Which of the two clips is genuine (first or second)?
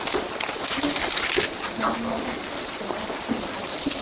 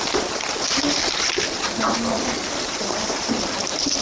first